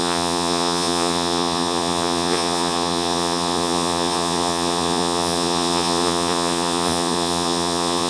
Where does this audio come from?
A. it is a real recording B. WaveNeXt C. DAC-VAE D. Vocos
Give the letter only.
D